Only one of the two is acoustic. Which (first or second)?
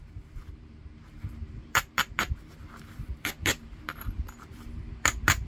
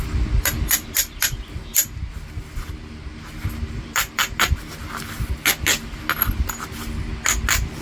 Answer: second